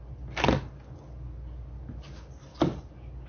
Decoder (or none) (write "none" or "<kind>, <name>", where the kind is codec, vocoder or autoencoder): none